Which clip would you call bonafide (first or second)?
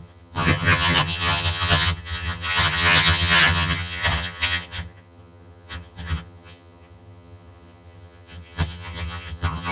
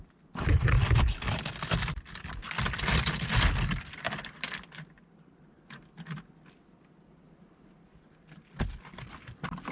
second